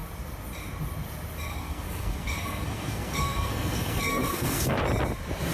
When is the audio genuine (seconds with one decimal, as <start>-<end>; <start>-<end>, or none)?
0.0-1.5; 4.8-5.5